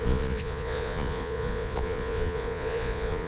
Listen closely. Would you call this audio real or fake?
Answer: fake